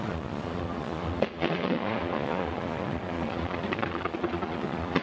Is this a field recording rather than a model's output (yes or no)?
no